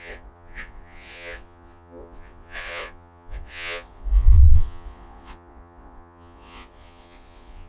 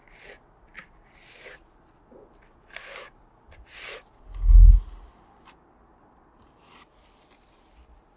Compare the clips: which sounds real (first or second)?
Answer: second